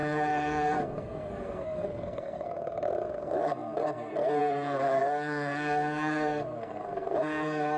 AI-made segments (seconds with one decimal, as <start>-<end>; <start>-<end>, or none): 0.0-7.8